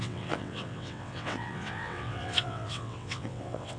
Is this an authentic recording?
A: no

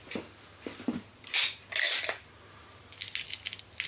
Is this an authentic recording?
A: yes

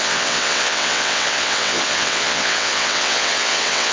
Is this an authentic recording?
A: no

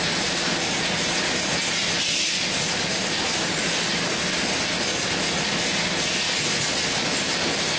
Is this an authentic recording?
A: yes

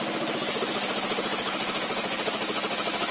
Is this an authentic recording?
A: yes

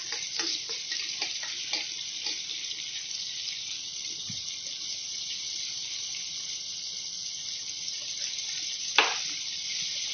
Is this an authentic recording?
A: yes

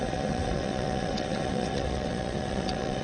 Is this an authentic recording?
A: no